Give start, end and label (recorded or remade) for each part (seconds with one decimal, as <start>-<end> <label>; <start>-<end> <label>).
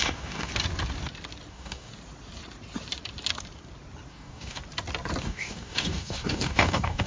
0.0-0.5 remade; 0.5-1.5 recorded; 1.5-1.9 remade; 1.9-4.1 recorded; 4.1-4.6 remade; 4.6-5.2 recorded; 5.2-7.1 remade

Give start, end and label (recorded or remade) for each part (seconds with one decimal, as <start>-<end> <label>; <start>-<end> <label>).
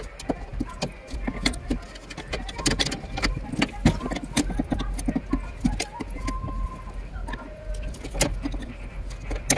0.0-9.6 recorded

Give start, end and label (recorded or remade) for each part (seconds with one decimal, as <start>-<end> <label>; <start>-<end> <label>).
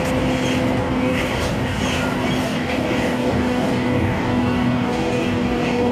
0.0-0.8 recorded; 0.8-1.8 remade; 1.8-2.4 recorded; 2.4-5.9 remade